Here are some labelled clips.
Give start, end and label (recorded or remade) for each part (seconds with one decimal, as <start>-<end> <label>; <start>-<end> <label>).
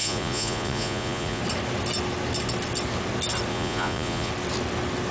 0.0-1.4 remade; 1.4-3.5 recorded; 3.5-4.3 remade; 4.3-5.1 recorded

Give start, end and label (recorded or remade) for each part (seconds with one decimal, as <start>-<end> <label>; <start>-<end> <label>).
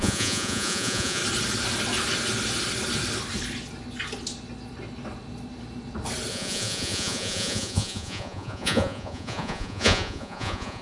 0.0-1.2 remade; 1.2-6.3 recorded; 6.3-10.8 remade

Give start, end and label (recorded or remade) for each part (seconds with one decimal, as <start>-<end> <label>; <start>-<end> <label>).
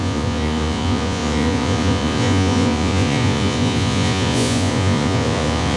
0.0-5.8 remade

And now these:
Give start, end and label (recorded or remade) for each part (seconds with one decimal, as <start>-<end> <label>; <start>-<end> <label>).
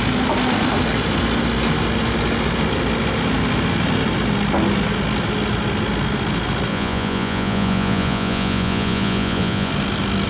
0.0-6.7 recorded; 6.7-9.7 remade; 9.7-10.3 recorded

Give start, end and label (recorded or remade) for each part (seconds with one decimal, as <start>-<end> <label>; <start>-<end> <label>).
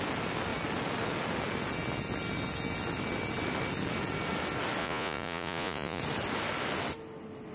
0.0-4.8 recorded; 4.8-6.0 remade; 6.0-7.5 recorded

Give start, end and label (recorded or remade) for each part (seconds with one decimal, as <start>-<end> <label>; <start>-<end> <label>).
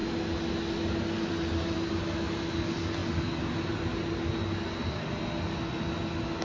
0.0-6.4 recorded